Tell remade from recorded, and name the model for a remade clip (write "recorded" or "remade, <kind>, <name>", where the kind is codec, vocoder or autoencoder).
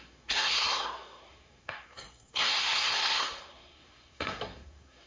remade, codec, SNAC